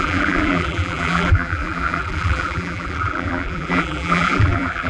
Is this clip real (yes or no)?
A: no